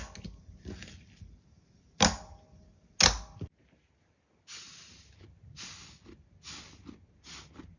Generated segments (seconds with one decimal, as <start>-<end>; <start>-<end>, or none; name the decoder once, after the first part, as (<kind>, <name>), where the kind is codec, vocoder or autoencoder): none